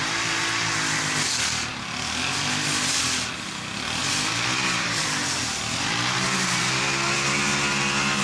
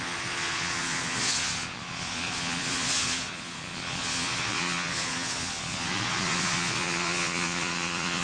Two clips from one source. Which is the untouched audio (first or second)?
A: first